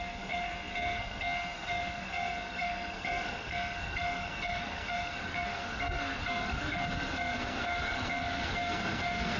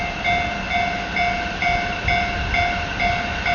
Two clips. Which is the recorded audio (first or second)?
second